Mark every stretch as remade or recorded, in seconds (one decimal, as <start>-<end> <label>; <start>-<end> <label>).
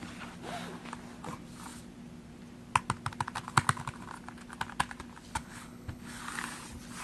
0.0-5.3 recorded; 5.3-6.2 remade; 6.2-7.0 recorded